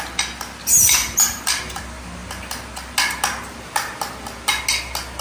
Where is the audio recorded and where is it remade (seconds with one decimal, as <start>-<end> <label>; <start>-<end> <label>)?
0.0-1.0 recorded; 1.0-1.8 remade; 1.8-5.2 recorded